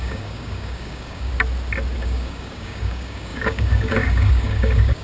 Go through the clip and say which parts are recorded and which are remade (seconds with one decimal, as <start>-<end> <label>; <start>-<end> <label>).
0.0-1.3 remade; 1.3-2.0 recorded; 2.0-5.0 remade